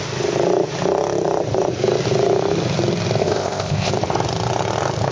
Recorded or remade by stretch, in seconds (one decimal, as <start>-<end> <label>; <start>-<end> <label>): 0.0-3.2 recorded; 3.2-3.9 remade; 3.9-5.1 recorded